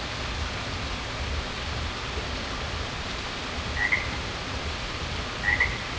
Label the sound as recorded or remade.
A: remade